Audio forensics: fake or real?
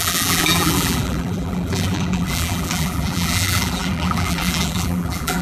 fake